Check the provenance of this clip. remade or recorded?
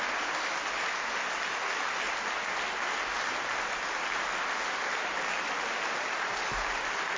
recorded